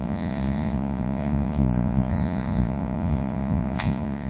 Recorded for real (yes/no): no